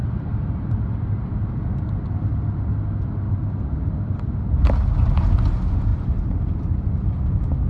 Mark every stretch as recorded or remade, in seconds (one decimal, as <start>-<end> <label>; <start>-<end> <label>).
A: 0.0-7.7 recorded